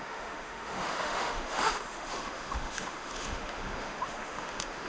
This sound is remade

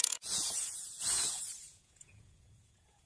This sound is remade